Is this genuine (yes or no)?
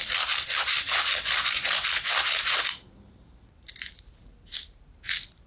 no